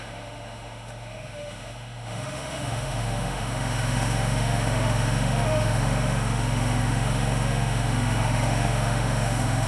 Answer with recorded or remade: remade